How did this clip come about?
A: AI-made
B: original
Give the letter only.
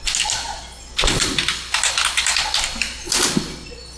B